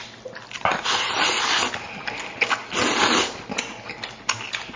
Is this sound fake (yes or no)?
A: no